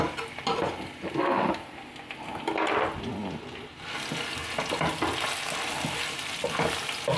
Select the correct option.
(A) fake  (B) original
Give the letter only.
B